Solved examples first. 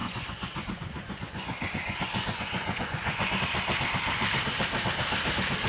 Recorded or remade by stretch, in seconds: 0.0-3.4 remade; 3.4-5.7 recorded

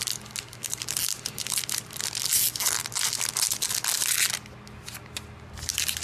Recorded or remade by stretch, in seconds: 0.0-6.0 recorded

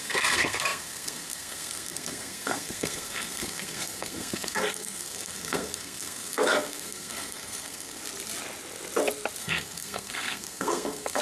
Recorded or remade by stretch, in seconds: 0.0-8.0 remade; 8.0-9.4 recorded; 9.4-11.2 remade

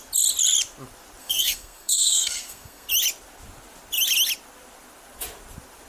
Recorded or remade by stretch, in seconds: 0.0-1.2 recorded; 1.2-2.9 remade; 2.9-5.9 recorded

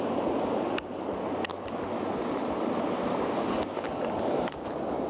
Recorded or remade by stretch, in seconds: 0.0-5.1 recorded

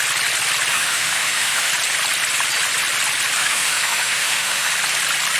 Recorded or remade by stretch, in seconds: 0.0-0.7 recorded; 0.7-1.7 remade; 1.7-3.4 recorded; 3.4-4.7 remade; 4.7-5.4 recorded

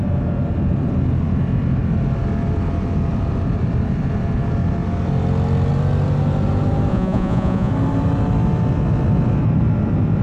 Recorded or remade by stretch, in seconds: 0.0-6.9 recorded; 6.9-7.7 remade; 7.7-10.2 recorded

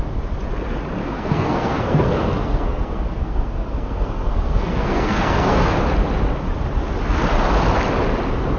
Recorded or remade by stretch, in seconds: 0.0-1.0 recorded; 1.0-5.8 remade; 5.8-8.6 recorded